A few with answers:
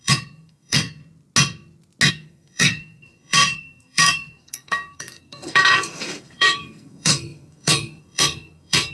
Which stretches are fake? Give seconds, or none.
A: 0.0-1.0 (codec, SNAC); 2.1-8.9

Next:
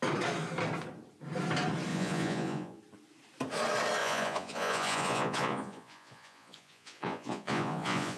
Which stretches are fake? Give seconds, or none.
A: 1.9-2.8 (vocoder, Vocos); 4.0-8.2

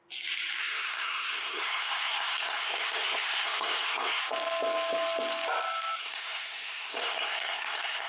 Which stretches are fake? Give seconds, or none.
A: 0.6-4.2 (codec, SNAC); 6.0-8.1

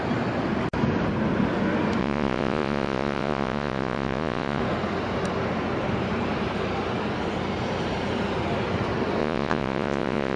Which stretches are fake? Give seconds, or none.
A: 2.0-4.6 (vocoder, Vocos); 9.2-10.4

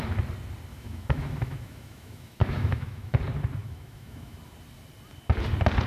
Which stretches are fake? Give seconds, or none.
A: 0.7-3.2 (autoencoder, DAC-VAE); 3.6-4.4

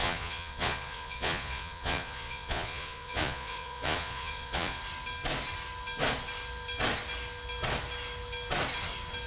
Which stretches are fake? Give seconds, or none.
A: 0.0-4.8 (vocoder, Vocos)

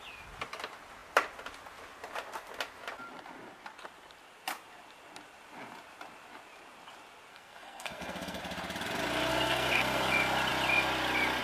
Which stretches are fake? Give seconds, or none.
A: 7.3-8.4 (codec, SNAC); 9.3-10.1

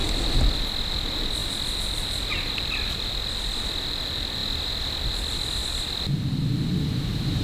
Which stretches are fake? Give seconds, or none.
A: 0.0-4.4 (vocoder, BigVGAN v2); 5.0-5.6